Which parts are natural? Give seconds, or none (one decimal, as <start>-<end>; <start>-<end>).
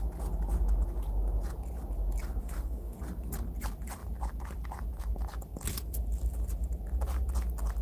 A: 0.0-2.4; 3.0-7.8